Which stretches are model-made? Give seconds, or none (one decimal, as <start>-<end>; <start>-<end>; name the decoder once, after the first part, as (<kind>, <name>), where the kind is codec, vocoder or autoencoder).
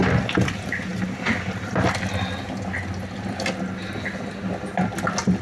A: none